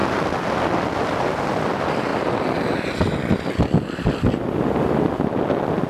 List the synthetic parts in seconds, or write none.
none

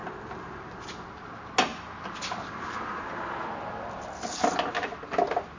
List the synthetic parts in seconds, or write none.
none

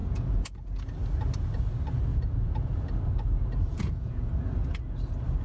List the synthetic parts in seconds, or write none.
0.0-0.9 (vocoder, Vocos); 2.1-2.9; 3.7-4.3

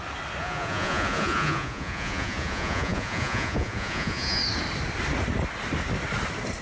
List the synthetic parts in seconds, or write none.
0.4-4.4 (vocoder, Vocos)

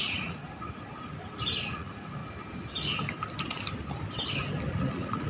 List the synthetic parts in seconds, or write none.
0.0-0.4 (vocoder, Vocos); 1.7-2.2; 4.7-5.3

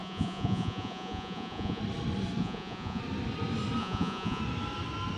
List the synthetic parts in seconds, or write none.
0.0-1.8 (vocoder, Vocos); 2.4-3.0; 3.8-4.4

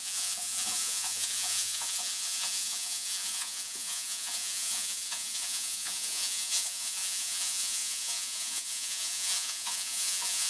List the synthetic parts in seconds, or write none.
0.0-10.5 (vocoder, Vocos)

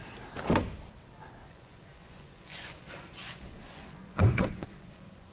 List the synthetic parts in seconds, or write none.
1.5-5.3 (vocoder, Vocos)